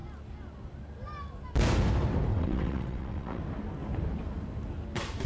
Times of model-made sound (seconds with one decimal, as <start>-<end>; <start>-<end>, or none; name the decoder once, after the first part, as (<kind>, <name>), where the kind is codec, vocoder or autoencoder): 2.3-3.4 (vocoder, WaveNeXt)